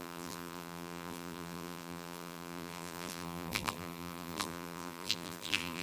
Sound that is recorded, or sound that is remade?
remade